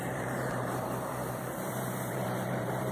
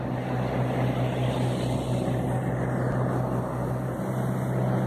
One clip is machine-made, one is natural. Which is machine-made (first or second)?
first